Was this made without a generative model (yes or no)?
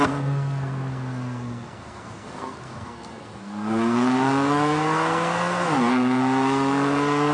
no